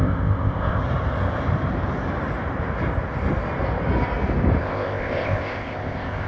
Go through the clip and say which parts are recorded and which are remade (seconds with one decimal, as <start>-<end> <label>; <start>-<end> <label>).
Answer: 0.0-0.8 remade; 0.8-4.6 recorded; 4.6-6.3 remade